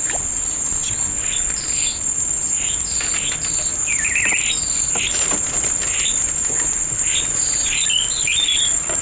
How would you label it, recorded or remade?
recorded